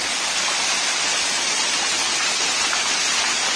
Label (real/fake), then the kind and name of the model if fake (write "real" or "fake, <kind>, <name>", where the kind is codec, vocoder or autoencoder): real